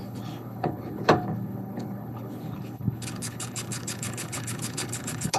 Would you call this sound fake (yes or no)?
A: yes